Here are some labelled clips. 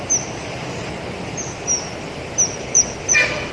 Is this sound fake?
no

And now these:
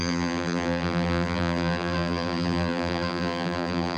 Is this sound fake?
yes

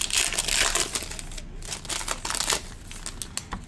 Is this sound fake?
no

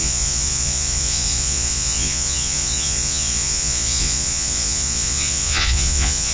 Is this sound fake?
yes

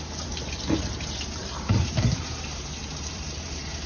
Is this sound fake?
yes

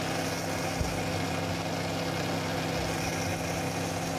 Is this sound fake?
no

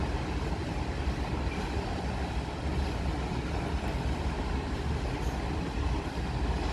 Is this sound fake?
no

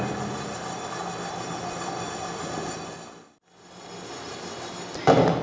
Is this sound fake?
no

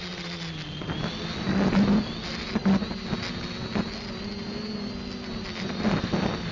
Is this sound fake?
no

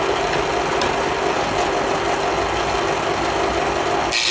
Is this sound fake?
no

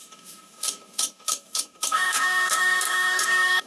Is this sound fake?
yes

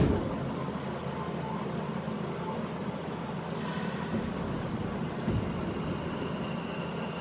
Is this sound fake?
no